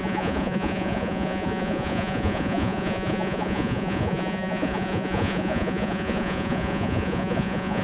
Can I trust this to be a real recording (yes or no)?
no